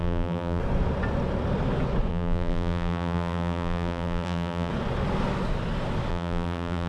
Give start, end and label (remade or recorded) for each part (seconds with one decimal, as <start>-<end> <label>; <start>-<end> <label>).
0.0-0.6 remade; 0.6-2.1 recorded; 2.1-4.7 remade; 4.7-6.1 recorded; 6.1-6.9 remade